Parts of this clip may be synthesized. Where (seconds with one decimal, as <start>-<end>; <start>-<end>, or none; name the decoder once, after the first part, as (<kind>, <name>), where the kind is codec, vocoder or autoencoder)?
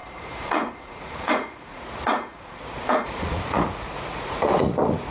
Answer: 0.0-5.1 (vocoder, Vocos)